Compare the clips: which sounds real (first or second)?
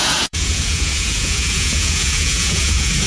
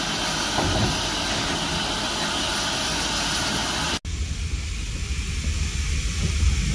second